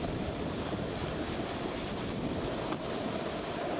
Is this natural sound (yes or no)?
yes